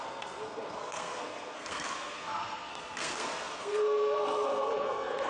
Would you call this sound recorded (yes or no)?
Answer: no